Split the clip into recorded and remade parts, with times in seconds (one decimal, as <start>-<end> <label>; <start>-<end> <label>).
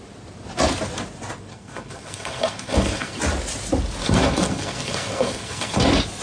0.0-1.5 recorded; 1.5-3.2 remade; 3.2-4.0 recorded; 4.0-5.8 remade; 5.8-6.2 recorded